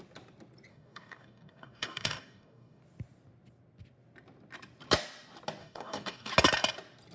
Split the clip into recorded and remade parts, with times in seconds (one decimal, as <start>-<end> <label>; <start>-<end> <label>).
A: 0.0-0.7 recorded; 0.7-2.8 remade; 2.8-5.6 recorded; 5.6-6.3 remade; 6.3-7.1 recorded